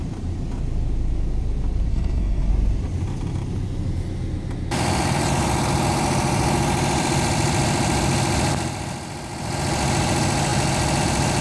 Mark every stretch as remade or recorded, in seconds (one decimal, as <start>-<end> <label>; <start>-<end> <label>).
0.0-1.9 recorded; 1.9-2.5 remade; 2.5-11.4 recorded